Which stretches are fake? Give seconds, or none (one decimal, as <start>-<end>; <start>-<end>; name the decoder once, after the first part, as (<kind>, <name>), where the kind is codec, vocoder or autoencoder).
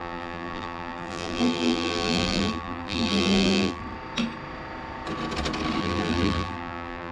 0.0-3.8 (vocoder, BigVGAN v2); 5.8-7.1